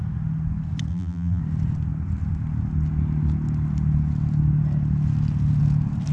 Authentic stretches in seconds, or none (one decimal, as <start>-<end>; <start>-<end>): 0.0-0.9; 1.4-6.1